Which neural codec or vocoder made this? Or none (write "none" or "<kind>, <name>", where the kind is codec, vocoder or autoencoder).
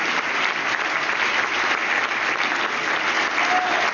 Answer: none